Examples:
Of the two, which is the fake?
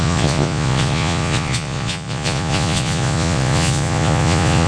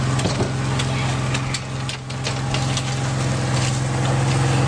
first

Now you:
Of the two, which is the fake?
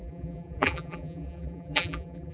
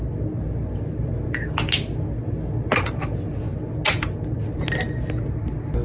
first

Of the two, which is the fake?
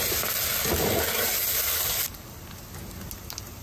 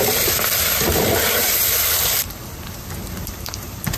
second